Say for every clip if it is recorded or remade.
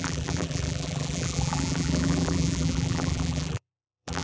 remade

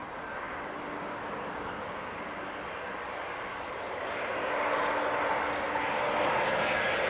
recorded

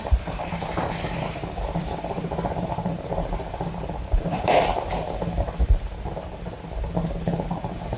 remade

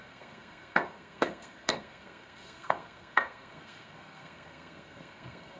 remade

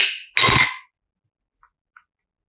recorded